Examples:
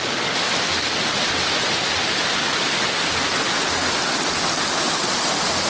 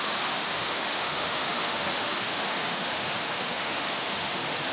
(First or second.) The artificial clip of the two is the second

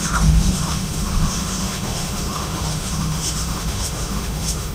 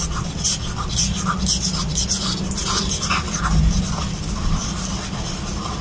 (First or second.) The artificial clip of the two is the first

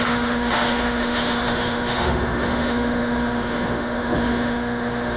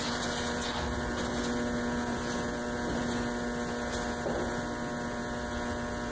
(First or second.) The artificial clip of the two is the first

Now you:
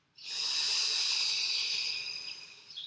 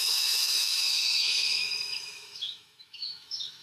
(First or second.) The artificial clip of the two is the second